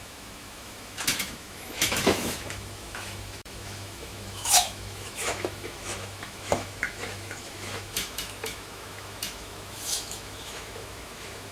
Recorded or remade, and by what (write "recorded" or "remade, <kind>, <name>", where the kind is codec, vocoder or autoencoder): remade, autoencoder, DAC-VAE